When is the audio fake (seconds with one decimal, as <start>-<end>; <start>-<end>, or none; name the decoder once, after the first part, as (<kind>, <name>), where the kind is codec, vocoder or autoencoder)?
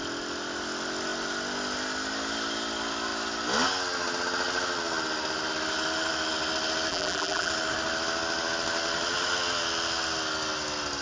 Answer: 6.9-7.5 (vocoder, BigVGAN v2)